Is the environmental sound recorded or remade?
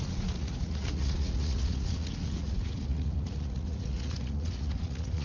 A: remade